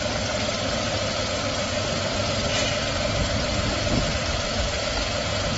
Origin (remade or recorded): recorded